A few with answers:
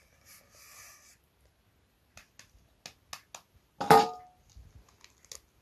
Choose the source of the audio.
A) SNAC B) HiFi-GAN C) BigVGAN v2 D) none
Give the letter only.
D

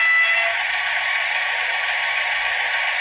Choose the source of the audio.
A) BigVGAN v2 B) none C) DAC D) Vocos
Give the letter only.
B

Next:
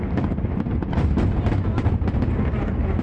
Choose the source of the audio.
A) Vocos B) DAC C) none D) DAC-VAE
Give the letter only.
C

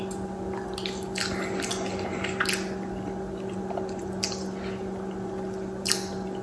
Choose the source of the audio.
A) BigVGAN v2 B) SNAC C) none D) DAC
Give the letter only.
C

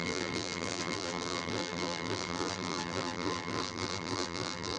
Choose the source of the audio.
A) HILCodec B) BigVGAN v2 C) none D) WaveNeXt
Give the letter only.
B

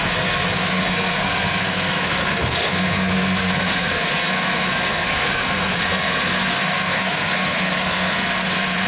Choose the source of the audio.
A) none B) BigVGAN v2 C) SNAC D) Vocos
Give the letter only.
C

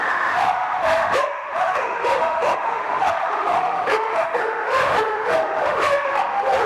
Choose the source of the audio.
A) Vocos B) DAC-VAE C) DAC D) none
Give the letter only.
B